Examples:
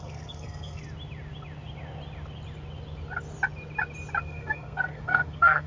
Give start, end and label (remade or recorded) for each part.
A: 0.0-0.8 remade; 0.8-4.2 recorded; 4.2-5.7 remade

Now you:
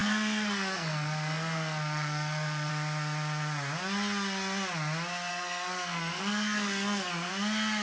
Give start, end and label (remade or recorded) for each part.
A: 0.0-2.7 remade; 2.7-5.3 recorded; 5.3-7.3 remade; 7.3-7.8 recorded

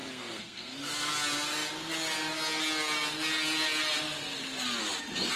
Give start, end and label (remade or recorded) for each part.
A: 0.0-1.1 remade; 1.1-5.4 recorded

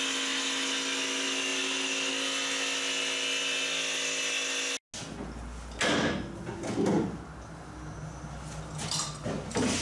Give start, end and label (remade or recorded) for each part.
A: 0.0-9.8 recorded

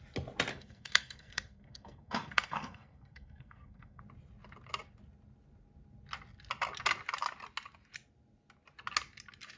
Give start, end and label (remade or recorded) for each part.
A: 0.0-0.5 recorded; 0.5-4.0 remade; 4.0-9.6 recorded